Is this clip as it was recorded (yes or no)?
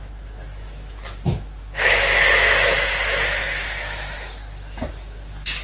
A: no